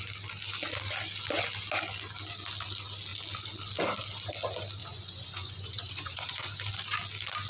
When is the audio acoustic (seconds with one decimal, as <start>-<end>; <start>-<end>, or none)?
0.0-4.8; 6.5-7.5